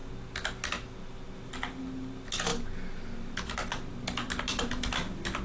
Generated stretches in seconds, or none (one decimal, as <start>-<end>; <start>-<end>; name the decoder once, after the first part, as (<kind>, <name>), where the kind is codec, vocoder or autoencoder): none